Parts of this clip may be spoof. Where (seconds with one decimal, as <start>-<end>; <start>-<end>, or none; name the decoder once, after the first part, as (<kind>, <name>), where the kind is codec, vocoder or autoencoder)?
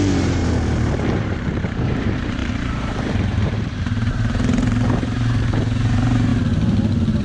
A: 0.0-0.4 (vocoder, BigVGAN v2); 1.1-6.3